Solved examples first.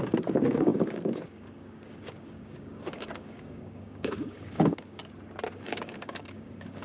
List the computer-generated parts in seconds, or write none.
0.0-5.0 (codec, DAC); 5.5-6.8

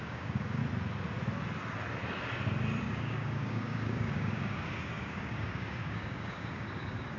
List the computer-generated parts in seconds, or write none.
0.0-0.6 (codec, DAC); 2.8-7.2

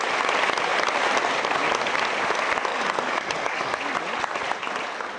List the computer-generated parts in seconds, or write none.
2.7-3.8 (codec, DAC)

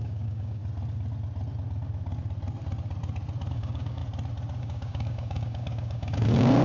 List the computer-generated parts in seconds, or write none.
0.0-0.6 (codec, DAC); 3.5-4.0; 4.6-6.6